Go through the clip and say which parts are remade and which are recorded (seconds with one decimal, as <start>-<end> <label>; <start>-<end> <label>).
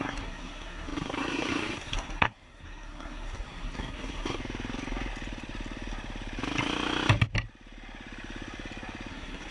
0.0-4.4 remade; 4.4-9.1 recorded; 9.1-9.5 remade